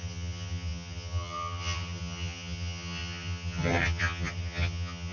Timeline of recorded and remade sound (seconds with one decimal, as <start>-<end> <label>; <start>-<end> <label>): 0.0-5.1 remade